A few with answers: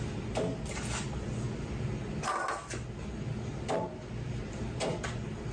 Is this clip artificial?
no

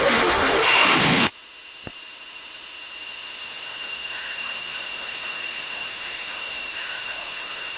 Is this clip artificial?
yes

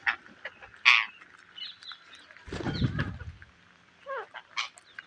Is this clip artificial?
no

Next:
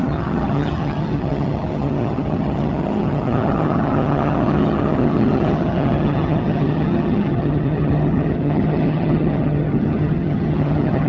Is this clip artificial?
yes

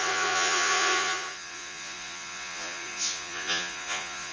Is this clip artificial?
yes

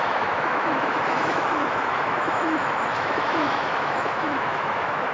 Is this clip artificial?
yes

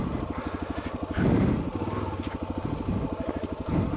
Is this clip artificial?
no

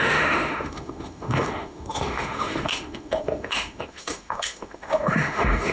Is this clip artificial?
yes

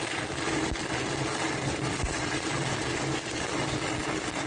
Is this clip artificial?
no